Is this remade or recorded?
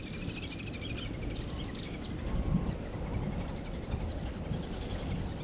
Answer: recorded